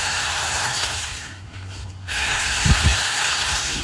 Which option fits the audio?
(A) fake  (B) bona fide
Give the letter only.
A